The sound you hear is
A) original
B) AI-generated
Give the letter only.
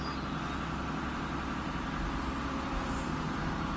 A